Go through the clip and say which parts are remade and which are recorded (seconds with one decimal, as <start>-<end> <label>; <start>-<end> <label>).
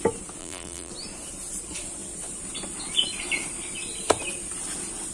0.0-0.4 recorded; 0.4-0.9 remade; 0.9-5.1 recorded